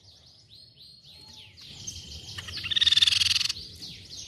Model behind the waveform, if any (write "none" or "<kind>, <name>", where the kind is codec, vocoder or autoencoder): none